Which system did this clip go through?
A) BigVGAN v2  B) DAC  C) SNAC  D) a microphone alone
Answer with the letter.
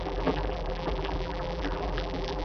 A